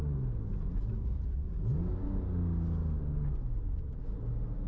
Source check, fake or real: real